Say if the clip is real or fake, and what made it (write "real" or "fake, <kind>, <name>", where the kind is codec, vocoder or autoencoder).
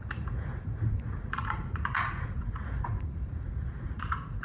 fake, vocoder, Vocos